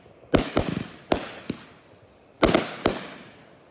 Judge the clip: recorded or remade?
recorded